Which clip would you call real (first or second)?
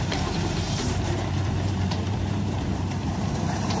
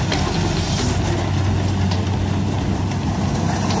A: second